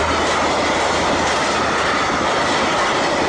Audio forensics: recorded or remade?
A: recorded